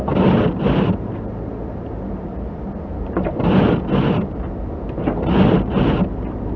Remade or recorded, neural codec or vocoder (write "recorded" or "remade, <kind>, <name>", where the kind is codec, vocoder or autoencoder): recorded